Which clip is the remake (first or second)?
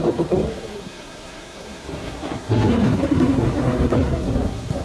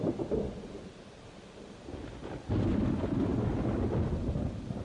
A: first